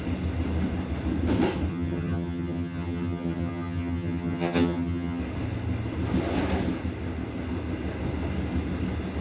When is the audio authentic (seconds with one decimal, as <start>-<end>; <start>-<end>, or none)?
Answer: 0.0-1.7; 5.2-9.2